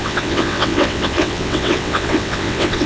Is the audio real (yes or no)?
no